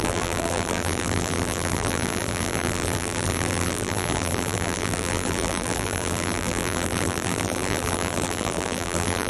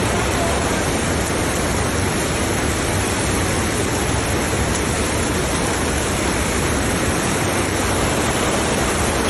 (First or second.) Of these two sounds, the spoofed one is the first